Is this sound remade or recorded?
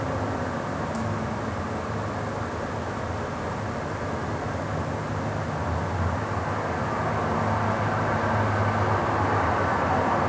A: recorded